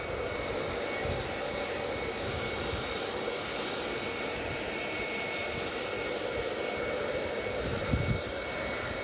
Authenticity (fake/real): real